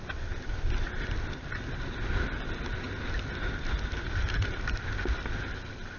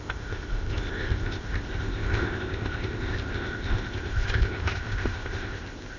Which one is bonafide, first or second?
first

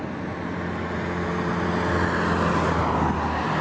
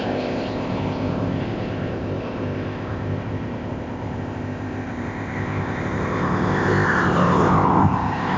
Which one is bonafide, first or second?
first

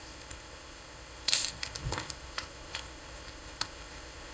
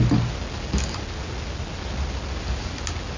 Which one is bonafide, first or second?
second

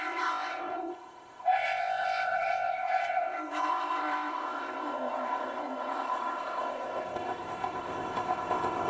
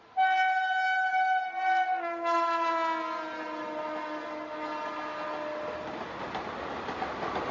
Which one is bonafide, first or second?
second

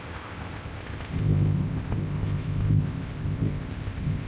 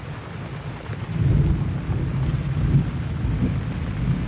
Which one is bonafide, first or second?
second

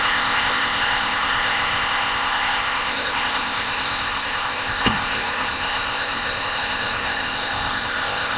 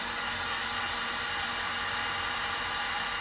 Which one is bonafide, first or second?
second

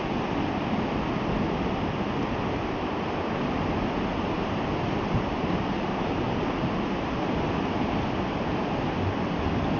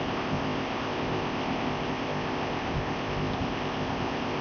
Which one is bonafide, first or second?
first